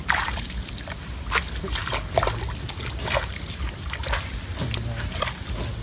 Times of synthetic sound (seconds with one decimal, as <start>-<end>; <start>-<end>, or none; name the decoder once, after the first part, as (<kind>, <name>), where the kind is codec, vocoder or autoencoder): none